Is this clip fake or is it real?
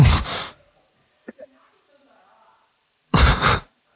fake